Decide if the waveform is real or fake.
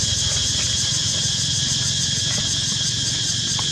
real